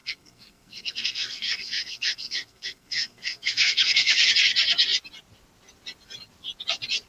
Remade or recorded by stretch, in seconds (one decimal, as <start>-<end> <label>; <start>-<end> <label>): 0.0-4.3 remade; 4.3-7.1 recorded